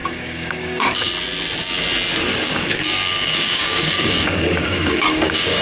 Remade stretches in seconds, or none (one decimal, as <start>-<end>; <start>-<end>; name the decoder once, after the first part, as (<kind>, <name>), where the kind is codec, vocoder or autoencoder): 0.0-1.1 (codec, DAC); 2.3-5.6